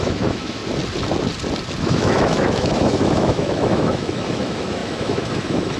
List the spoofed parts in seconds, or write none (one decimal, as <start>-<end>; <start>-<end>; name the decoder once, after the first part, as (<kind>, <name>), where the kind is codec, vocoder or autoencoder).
0.0-0.6 (autoencoder, DAC-VAE); 1.8-5.8

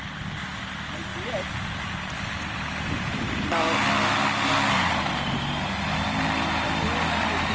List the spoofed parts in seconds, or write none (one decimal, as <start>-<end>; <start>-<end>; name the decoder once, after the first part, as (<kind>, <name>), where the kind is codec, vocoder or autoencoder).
1.1-1.8 (vocoder, BigVGAN v2)